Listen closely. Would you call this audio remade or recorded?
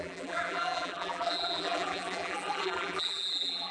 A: remade